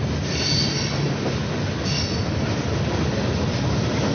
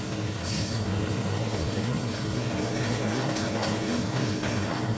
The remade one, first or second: second